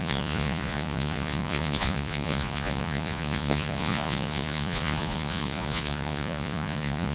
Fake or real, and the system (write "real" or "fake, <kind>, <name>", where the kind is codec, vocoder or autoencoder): fake, vocoder, Vocos